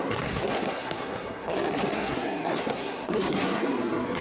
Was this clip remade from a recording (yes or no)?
yes